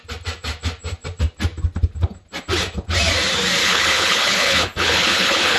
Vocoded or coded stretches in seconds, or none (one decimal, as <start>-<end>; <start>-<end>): 3.6-5.6